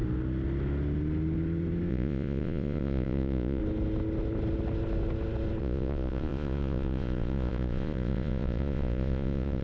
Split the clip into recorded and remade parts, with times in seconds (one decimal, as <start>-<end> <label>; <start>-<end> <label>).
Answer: 0.0-1.9 recorded; 1.9-3.6 remade; 3.6-5.6 recorded; 5.6-9.6 remade